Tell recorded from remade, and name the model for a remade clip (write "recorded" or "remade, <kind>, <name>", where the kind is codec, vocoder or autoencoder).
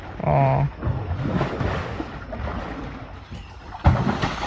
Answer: remade, vocoder, BigVGAN v2